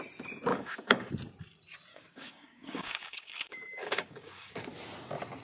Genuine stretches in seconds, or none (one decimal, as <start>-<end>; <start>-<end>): 0.0-0.5; 1.1-1.9; 4.5-5.4